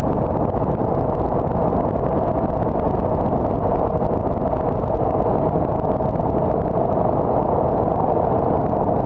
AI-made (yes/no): no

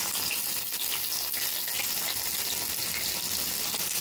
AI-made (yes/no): no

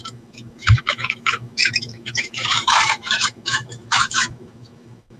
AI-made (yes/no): yes